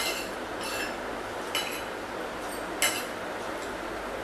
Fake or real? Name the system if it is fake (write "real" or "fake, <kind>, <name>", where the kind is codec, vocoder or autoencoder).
real